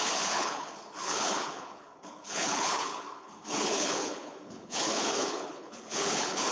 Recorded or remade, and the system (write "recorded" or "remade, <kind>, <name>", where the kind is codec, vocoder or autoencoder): remade, codec, HILCodec